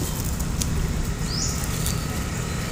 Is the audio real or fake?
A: real